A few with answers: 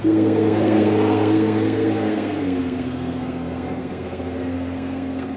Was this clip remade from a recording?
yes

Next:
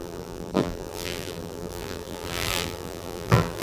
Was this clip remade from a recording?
yes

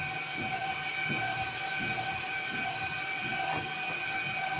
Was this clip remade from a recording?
no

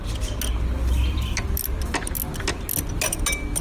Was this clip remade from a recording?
no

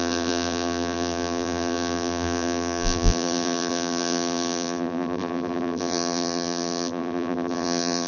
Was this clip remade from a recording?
yes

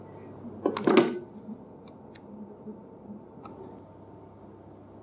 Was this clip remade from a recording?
no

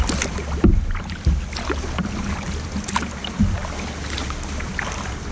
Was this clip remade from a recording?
no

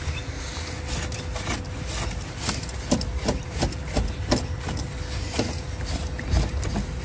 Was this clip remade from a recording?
no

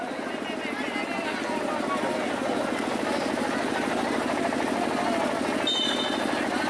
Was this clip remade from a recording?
no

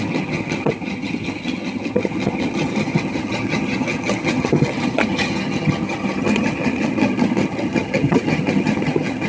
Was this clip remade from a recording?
yes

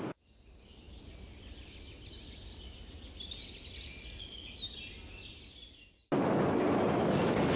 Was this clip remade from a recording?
no